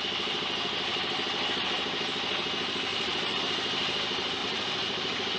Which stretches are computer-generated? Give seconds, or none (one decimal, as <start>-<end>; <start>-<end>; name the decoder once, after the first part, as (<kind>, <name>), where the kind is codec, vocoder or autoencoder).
2.9-3.4 (vocoder, Vocos); 4.4-5.4